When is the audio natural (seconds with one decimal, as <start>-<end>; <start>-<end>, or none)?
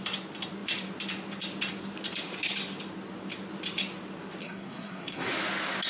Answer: 0.0-4.4; 5.3-5.9